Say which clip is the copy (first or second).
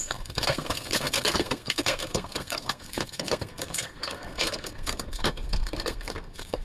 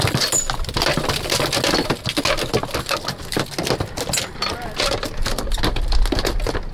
first